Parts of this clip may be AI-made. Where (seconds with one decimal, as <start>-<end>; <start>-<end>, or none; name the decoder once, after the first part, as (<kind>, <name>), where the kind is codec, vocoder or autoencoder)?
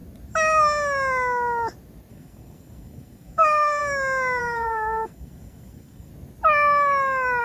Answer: 2.1-3.8 (codec, SNAC); 4.4-6.1